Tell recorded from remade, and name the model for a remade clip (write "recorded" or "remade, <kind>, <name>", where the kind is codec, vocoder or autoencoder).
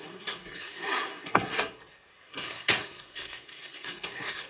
remade, codec, SNAC